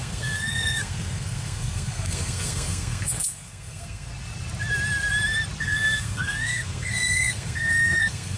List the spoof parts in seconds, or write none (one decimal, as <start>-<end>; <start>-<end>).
0.0-4.1; 5.6-8.4